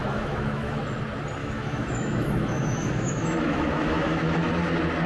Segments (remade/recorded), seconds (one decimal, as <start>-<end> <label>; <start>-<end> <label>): 0.0-0.8 remade; 0.8-1.4 recorded; 1.4-4.5 remade; 4.5-5.1 recorded